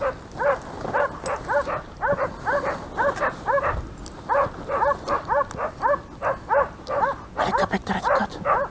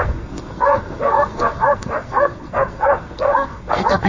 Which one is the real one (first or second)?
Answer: first